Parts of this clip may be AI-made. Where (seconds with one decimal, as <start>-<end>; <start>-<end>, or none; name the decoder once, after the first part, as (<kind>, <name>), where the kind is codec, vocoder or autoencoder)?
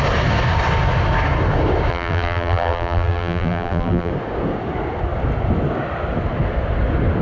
1.9-4.1 (vocoder, BigVGAN v2)